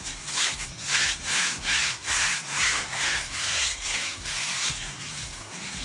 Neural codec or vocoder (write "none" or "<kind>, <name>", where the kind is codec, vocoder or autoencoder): codec, SNAC